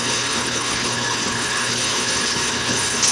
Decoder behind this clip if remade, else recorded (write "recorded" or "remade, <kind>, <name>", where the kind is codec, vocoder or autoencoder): remade, codec, HILCodec